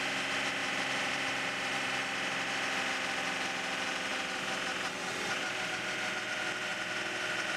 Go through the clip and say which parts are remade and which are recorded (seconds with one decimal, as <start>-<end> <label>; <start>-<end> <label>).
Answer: 0.0-0.6 recorded; 0.6-2.0 remade; 2.0-7.6 recorded